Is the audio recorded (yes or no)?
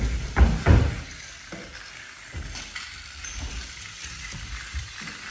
yes